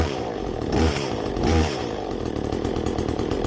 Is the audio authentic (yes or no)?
no